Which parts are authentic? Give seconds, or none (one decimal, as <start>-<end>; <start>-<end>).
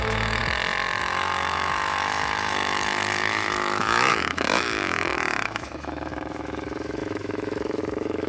0.4-1.0